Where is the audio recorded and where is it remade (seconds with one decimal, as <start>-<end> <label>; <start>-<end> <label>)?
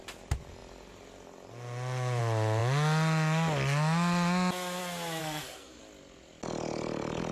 0.0-5.2 recorded; 5.2-5.8 remade; 5.8-7.3 recorded